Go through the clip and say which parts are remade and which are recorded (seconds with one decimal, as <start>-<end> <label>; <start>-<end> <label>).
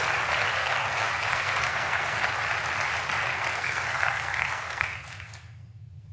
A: 0.0-0.6 recorded; 0.6-2.3 remade; 2.3-3.3 recorded; 3.3-6.1 remade